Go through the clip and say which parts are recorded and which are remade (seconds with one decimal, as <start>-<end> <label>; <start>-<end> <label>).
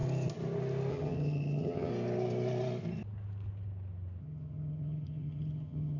0.0-0.9 recorded; 0.9-1.9 remade; 1.9-4.2 recorded; 4.2-6.0 remade